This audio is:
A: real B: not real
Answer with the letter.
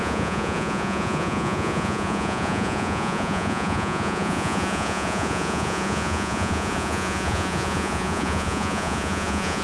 B